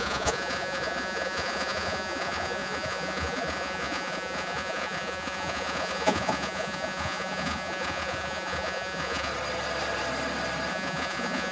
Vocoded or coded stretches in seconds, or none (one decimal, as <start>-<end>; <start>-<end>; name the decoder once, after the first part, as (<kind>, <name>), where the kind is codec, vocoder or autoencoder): 0.0-9.3 (vocoder, Vocos); 10.7-11.5